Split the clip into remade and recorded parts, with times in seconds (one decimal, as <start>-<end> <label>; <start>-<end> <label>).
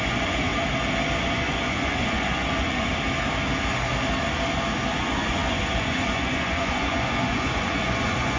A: 0.0-0.5 remade; 0.5-1.2 recorded; 1.2-2.9 remade; 2.9-4.9 recorded; 4.9-8.4 remade